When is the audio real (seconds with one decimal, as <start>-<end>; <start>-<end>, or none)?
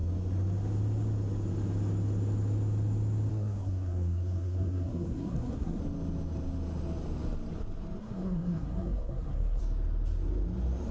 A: 0.0-3.3; 5.8-8.0; 9.6-10.9